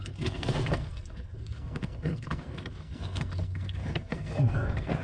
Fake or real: fake